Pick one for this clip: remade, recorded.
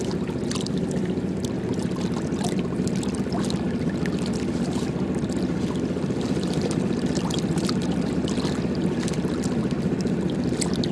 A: recorded